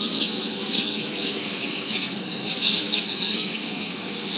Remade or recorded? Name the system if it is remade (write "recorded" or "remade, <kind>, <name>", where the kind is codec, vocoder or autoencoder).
remade, codec, SNAC